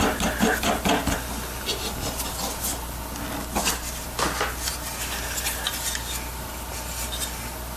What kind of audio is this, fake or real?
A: real